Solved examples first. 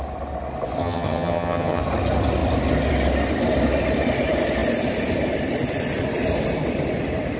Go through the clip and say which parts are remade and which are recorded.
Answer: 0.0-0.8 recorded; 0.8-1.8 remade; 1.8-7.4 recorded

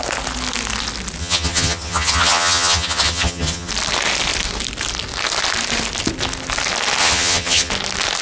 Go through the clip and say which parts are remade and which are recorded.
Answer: 0.0-1.2 recorded; 1.2-3.7 remade; 3.7-7.0 recorded; 7.0-7.7 remade; 7.7-8.2 recorded

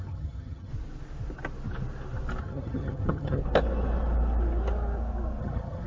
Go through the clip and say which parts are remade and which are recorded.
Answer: 0.0-0.7 remade; 0.7-2.4 recorded; 2.4-3.4 remade; 3.4-5.4 recorded; 5.4-5.9 remade

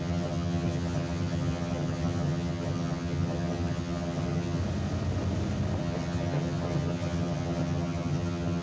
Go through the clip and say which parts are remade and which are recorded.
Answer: 0.0-4.6 remade; 4.6-5.8 recorded; 5.8-8.6 remade

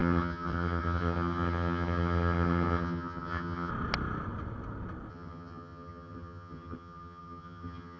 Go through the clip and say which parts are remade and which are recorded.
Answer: 0.0-3.7 remade; 3.7-5.1 recorded; 5.1-8.0 remade

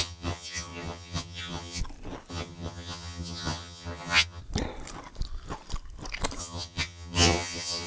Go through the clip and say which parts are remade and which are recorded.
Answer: 0.0-1.8 remade; 1.8-2.3 recorded; 2.3-4.4 remade; 4.4-6.4 recorded; 6.4-7.9 remade

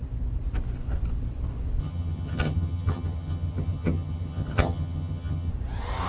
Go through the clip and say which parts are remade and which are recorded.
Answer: 0.0-1.8 recorded; 1.8-5.5 remade; 5.5-6.1 recorded

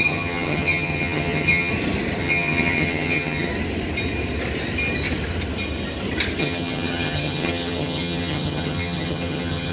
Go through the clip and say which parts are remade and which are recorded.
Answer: 0.0-1.7 remade; 1.7-2.2 recorded; 2.2-3.5 remade; 3.5-6.4 recorded; 6.4-9.7 remade